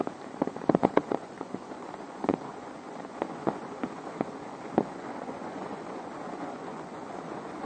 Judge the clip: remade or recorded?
remade